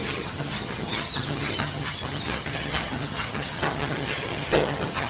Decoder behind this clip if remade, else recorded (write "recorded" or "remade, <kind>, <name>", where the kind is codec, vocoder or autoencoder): remade, vocoder, HiFi-GAN